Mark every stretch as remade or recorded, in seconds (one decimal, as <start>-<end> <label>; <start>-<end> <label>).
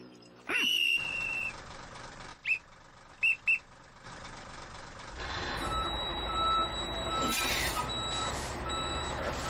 0.0-2.3 remade; 2.3-4.1 recorded; 4.1-9.5 remade